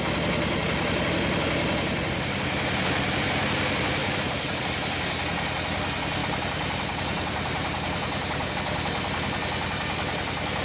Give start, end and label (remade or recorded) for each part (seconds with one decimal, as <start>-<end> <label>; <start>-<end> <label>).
0.0-4.0 recorded; 4.0-4.6 remade; 4.6-6.2 recorded; 6.2-8.5 remade; 8.5-10.6 recorded